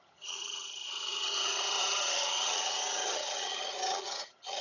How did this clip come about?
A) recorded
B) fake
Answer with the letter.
B